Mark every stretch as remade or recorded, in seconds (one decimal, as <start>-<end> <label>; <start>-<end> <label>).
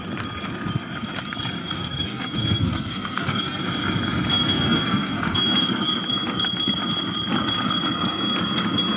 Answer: 0.0-1.6 recorded; 1.6-3.6 remade; 3.6-4.3 recorded; 4.3-5.8 remade; 5.8-9.0 recorded